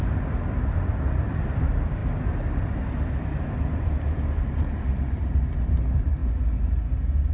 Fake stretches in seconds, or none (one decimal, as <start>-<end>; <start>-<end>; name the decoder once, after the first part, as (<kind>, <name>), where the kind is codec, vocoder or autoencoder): none